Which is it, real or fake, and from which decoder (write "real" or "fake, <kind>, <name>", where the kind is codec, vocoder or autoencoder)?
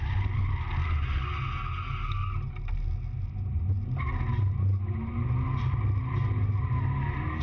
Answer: real